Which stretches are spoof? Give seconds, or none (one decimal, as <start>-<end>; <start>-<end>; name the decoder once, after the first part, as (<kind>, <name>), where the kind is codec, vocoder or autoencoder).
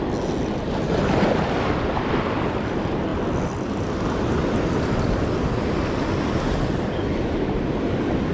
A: none